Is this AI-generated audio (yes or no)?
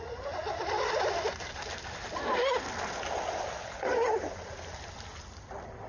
no